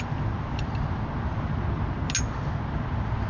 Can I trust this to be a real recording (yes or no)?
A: yes